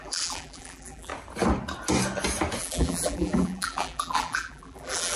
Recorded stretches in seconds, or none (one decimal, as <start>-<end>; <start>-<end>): 1.1-2.6